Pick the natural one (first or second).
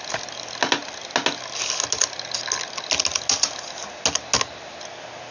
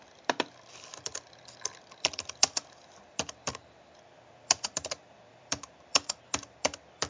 first